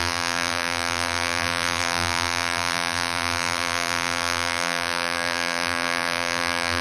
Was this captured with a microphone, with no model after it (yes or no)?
no